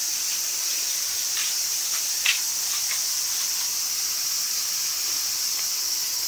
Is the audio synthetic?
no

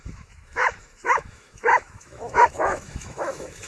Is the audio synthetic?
yes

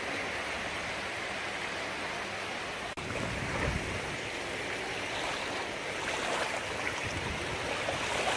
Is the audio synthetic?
no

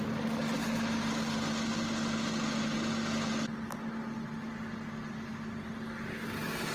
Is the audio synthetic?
no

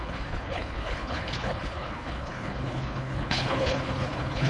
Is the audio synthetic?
yes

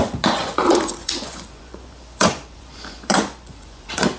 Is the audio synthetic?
yes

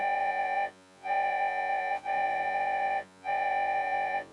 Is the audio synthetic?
yes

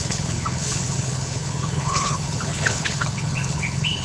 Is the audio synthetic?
yes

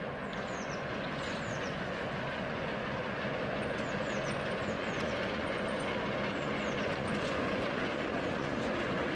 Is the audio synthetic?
yes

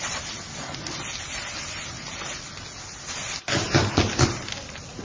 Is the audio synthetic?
no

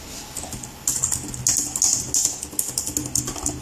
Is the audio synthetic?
no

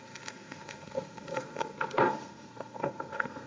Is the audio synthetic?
yes